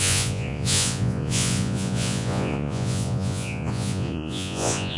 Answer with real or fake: fake